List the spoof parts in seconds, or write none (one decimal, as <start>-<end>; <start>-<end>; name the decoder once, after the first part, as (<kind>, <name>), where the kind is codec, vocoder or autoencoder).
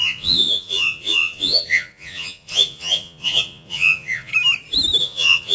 0.0-4.3 (vocoder, Vocos); 5.0-5.5